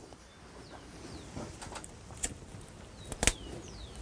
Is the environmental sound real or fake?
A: real